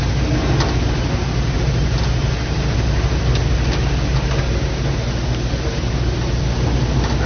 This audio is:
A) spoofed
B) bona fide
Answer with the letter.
B